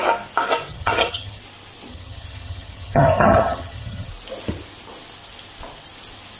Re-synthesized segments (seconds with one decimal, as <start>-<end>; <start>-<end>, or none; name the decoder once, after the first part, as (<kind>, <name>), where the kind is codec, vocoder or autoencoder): 0.7-1.4 (vocoder, HiFi-GAN); 1.9-4.1